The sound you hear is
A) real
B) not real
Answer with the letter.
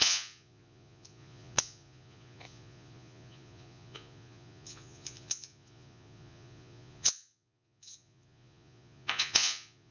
B